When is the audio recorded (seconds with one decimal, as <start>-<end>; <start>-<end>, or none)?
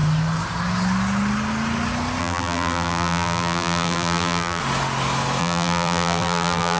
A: 0.0-2.2; 4.6-5.4